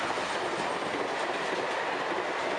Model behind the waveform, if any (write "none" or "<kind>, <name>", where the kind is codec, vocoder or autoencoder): none